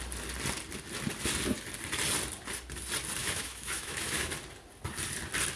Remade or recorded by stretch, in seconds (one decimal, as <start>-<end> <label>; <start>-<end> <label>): 0.0-3.2 recorded; 3.2-4.3 remade; 4.3-5.6 recorded